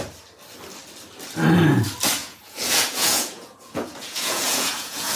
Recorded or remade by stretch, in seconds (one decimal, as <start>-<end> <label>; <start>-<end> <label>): 0.0-2.2 recorded; 2.2-5.2 remade